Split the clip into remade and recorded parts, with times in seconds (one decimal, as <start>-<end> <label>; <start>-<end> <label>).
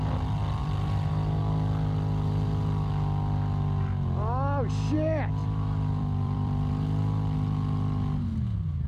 0.0-0.6 recorded; 0.6-1.4 remade; 1.4-5.4 recorded; 5.4-6.7 remade; 6.7-8.9 recorded